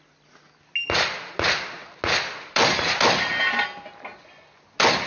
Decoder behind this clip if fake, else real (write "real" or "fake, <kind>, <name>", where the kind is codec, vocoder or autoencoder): real